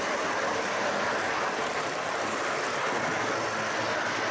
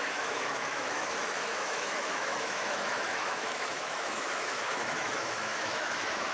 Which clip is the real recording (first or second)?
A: first